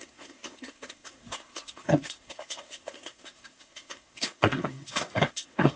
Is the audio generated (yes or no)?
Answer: yes